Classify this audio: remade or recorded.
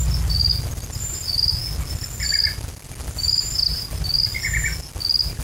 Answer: recorded